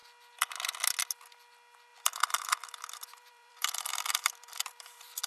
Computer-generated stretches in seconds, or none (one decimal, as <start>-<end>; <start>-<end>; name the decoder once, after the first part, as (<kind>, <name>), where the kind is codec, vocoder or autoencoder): 1.9-5.3 (vocoder, BigVGAN v2)